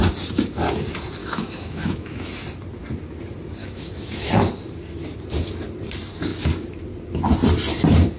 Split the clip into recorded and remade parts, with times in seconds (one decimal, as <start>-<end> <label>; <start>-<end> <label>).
0.0-1.2 recorded; 1.2-2.3 remade; 2.3-3.6 recorded; 3.6-4.3 remade; 4.3-8.2 recorded